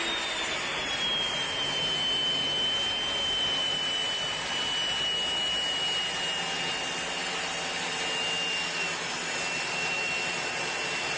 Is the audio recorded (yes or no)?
yes